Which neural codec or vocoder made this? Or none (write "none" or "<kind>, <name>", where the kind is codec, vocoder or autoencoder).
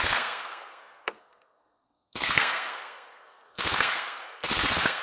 codec, SNAC